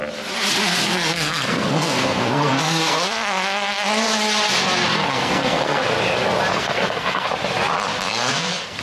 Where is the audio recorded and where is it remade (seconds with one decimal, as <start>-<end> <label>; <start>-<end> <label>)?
0.0-0.7 recorded; 0.7-3.1 remade; 3.1-4.9 recorded; 4.9-5.8 remade; 5.8-6.5 recorded; 6.5-7.3 remade; 7.3-8.1 recorded; 8.1-8.8 remade